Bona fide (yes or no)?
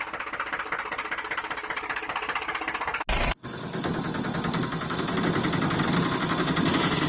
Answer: yes